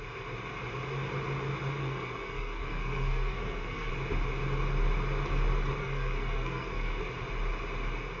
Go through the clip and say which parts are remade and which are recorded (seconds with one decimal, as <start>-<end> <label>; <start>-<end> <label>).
0.0-1.8 recorded; 1.8-3.9 remade; 3.9-5.8 recorded; 5.8-7.0 remade; 7.0-8.2 recorded